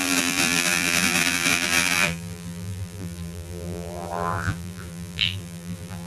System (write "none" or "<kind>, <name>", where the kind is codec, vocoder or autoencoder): vocoder, BigVGAN v2